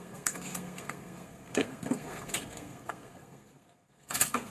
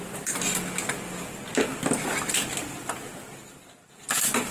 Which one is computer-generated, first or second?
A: first